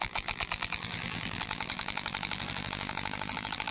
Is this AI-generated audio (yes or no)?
yes